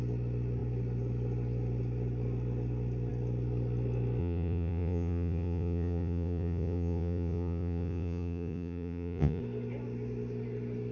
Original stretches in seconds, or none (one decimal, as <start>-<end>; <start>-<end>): 0.0-4.2; 9.4-10.9

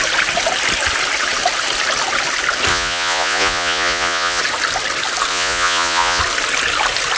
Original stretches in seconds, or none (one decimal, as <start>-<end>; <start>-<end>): 0.0-2.7; 4.4-5.3; 6.2-7.2

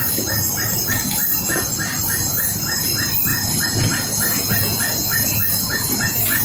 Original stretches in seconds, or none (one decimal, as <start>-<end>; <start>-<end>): 0.0-3.3

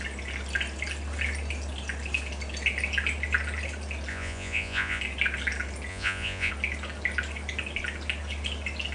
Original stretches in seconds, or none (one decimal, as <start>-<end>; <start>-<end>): 0.0-4.1; 5.0-5.9; 6.5-8.9